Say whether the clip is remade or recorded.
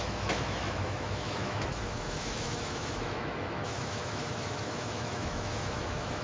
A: remade